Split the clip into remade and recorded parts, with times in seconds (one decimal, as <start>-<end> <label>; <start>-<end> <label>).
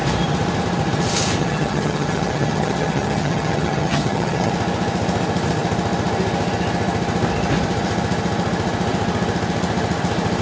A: 0.0-1.4 recorded; 1.4-4.5 remade; 4.5-10.4 recorded